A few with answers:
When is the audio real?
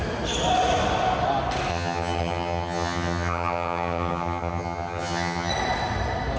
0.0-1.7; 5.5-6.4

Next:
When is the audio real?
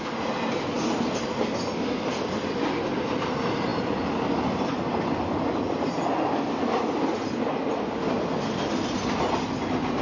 0.0-10.0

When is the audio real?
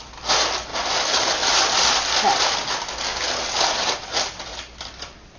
0.0-5.4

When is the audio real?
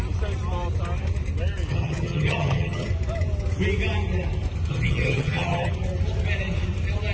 0.0-1.7; 2.9-4.7; 5.7-7.1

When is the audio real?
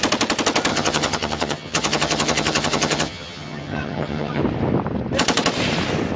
0.0-0.7; 4.4-6.2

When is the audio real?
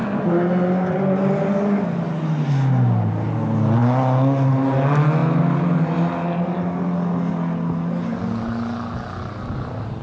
0.0-10.0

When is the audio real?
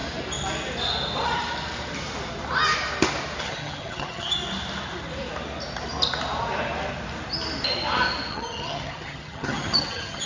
0.0-3.4; 4.4-8.3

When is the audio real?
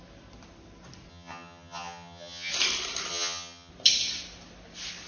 0.0-1.1; 2.5-3.1; 3.7-5.1